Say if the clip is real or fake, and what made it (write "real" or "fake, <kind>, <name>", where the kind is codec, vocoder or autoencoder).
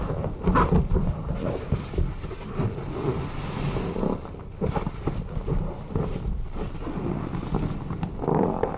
real